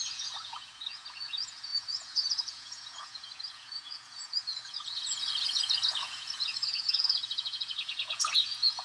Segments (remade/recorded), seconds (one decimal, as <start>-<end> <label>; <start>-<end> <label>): 0.0-8.8 remade